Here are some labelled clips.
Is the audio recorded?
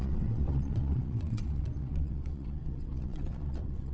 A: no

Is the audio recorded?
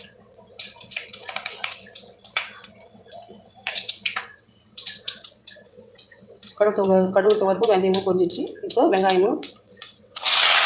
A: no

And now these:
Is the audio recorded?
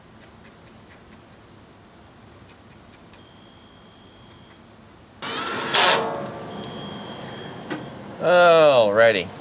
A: yes